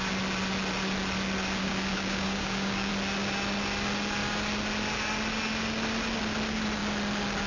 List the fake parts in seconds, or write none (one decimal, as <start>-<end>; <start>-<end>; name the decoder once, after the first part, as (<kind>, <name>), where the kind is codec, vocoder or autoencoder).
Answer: 1.6-2.9 (codec, DAC)